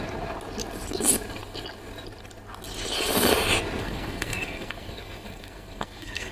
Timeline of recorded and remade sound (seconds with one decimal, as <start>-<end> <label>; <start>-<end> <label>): 0.0-3.8 recorded; 3.8-6.3 remade